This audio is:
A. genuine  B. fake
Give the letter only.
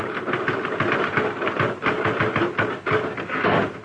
A